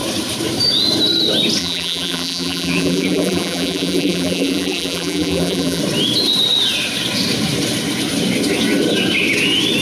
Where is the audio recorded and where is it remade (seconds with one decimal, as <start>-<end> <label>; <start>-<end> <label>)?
0.0-1.6 recorded; 1.6-5.8 remade; 5.8-9.8 recorded